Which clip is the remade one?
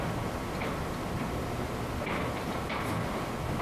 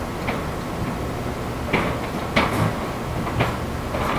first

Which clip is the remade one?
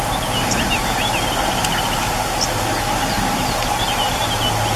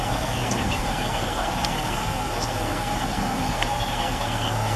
second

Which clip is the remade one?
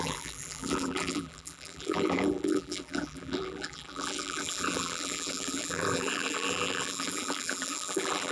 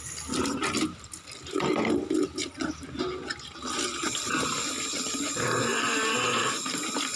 first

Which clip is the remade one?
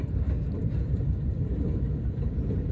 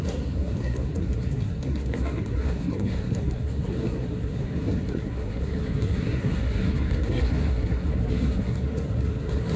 second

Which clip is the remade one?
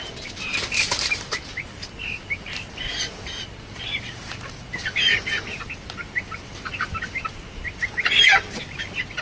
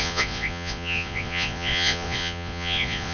second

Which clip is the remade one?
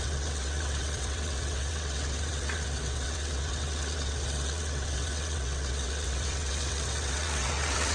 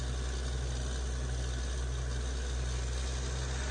first